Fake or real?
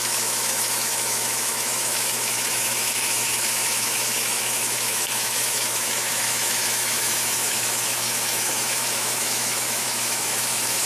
fake